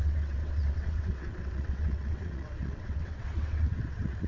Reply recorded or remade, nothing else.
remade